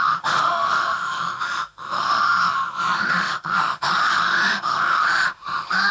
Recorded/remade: remade